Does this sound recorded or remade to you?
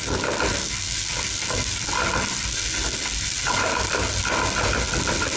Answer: recorded